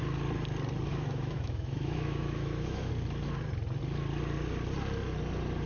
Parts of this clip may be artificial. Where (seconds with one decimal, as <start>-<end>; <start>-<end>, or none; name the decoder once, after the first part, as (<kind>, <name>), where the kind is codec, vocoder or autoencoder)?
0.9-2.9 (autoencoder, DAC-VAE)